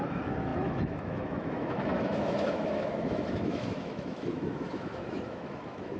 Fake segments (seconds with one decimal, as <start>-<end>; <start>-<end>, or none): 0.0-6.0